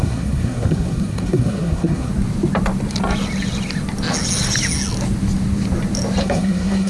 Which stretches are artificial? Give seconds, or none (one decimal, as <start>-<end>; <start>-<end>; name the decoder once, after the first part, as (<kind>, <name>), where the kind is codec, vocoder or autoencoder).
0.0-2.1 (codec, SNAC); 6.2-6.9